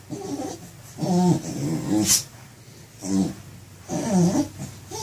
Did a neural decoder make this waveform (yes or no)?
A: no